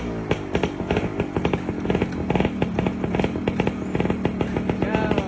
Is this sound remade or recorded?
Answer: recorded